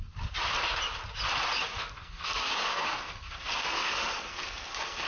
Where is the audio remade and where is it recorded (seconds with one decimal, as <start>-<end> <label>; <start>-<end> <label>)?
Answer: 0.0-1.8 recorded; 1.8-5.1 remade